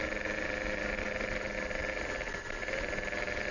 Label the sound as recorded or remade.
recorded